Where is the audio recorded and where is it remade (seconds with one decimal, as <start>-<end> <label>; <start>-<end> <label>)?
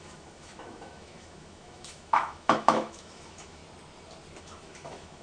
0.0-3.6 remade; 3.6-4.4 recorded; 4.4-5.2 remade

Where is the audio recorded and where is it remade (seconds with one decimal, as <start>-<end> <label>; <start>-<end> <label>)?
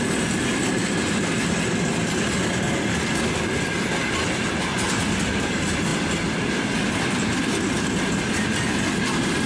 0.0-9.5 recorded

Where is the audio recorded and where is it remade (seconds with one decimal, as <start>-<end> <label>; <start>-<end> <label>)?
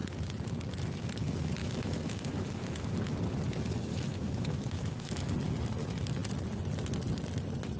0.0-1.6 recorded; 1.6-2.9 remade; 2.9-3.9 recorded; 3.9-5.3 remade; 5.3-7.8 recorded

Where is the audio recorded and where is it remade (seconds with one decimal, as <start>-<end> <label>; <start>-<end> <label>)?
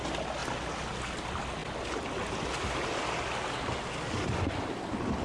0.0-5.2 recorded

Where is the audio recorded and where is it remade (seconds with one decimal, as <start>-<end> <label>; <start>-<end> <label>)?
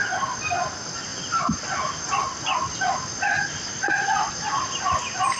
0.0-5.4 recorded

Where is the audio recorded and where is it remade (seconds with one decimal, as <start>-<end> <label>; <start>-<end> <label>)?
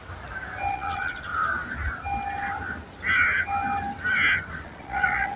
0.0-0.7 recorded; 0.7-1.3 remade; 1.3-4.5 recorded; 4.5-5.4 remade